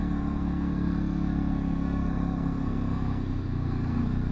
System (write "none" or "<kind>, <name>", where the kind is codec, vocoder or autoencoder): codec, SNAC